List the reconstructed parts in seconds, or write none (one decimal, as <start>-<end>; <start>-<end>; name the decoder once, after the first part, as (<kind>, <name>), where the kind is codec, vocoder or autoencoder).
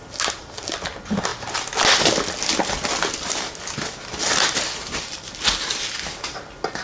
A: none